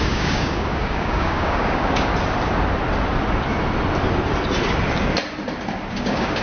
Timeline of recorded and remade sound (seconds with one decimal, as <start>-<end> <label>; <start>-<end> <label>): 0.0-2.1 remade; 2.1-5.9 recorded; 5.9-6.4 remade